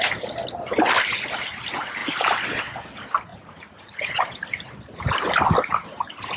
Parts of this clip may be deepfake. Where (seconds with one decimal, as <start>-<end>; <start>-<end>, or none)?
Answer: 3.3-4.4